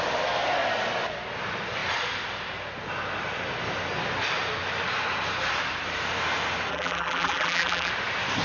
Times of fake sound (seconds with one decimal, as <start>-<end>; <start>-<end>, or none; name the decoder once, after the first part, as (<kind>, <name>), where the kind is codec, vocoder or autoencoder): 6.7-7.9 (vocoder, BigVGAN v2)